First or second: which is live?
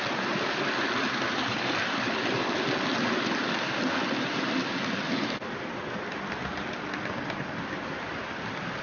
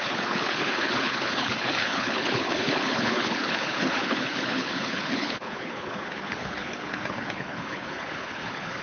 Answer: first